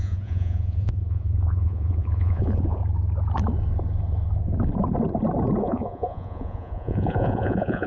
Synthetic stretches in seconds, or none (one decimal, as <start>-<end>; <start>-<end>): 0.0-2.8; 5.6-7.9